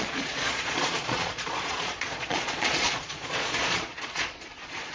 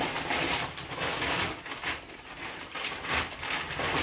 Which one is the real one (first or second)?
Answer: second